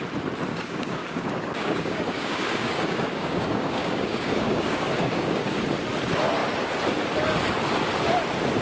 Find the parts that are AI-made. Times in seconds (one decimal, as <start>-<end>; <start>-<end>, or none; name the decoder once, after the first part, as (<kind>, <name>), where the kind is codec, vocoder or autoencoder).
0.5-5.6 (codec, DAC)